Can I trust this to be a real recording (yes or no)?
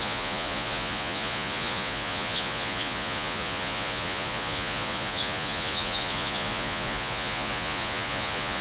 no